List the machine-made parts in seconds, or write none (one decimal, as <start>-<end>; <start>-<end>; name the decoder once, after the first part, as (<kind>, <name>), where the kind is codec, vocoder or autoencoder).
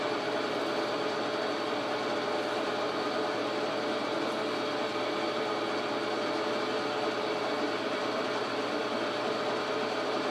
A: none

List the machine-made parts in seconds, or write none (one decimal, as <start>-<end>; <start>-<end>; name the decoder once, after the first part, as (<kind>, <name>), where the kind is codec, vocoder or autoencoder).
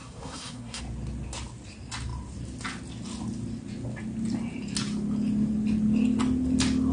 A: 0.0-0.8 (codec, SNAC)